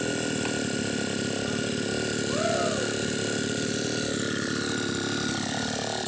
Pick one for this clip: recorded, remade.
recorded